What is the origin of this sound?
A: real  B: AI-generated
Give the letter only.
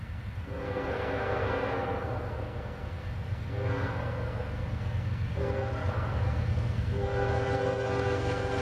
B